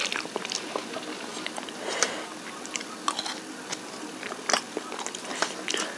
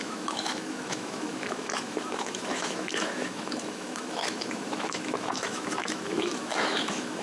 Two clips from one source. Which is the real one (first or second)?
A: first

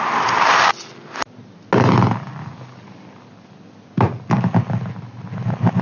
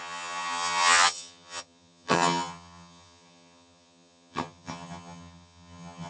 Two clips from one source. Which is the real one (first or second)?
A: first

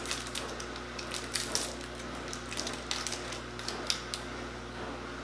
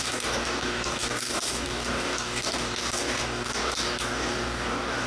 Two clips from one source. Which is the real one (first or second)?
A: first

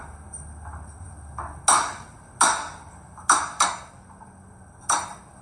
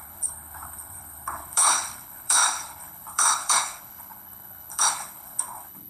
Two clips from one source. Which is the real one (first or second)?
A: first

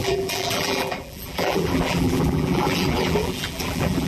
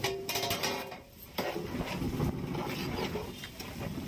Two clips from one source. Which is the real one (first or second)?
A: second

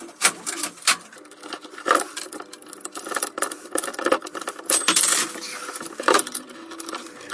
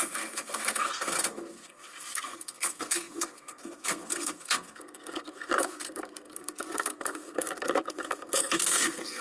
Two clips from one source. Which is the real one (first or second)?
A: first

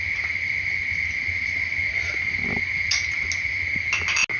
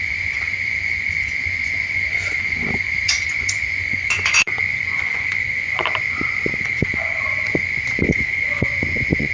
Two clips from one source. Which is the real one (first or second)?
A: first